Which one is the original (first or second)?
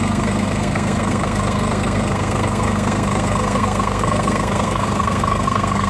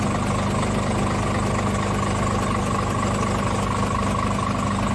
second